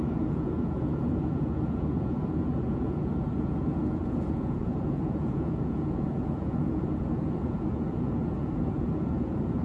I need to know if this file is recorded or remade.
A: remade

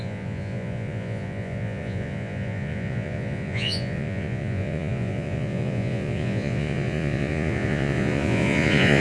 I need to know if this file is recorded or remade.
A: remade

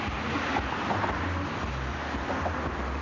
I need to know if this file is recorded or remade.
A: recorded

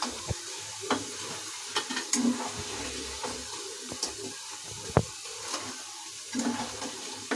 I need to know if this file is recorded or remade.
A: recorded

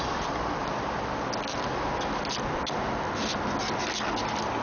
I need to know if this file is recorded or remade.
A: recorded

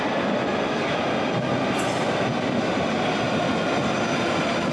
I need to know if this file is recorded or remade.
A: recorded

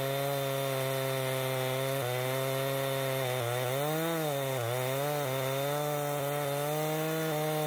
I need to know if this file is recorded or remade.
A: recorded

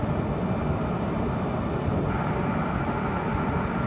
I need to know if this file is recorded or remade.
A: recorded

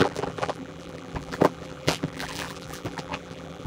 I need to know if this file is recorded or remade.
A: remade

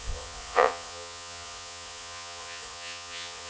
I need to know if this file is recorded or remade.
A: remade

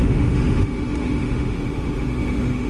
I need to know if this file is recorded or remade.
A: remade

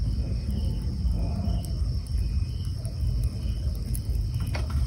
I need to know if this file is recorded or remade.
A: recorded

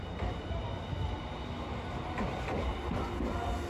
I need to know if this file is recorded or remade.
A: recorded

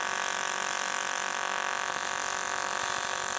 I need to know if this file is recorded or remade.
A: recorded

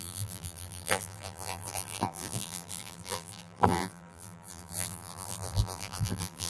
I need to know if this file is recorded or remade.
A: remade